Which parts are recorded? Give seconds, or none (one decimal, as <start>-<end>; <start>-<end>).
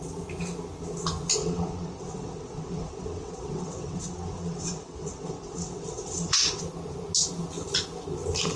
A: 0.0-1.4; 6.6-8.6